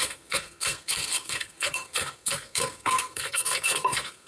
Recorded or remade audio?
remade